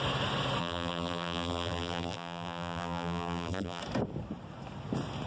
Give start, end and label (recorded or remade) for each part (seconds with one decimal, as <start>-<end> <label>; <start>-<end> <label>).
0.0-0.6 recorded; 0.6-3.8 remade; 3.8-5.3 recorded